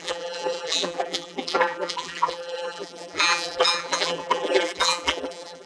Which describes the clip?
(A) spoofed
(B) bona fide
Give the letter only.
A